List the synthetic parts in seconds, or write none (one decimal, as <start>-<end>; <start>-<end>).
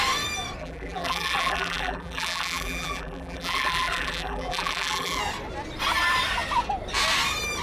0.6-5.2